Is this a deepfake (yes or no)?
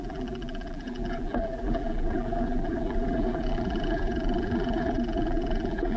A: yes